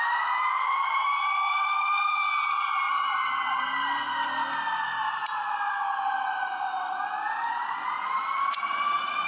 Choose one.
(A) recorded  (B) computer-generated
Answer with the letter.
A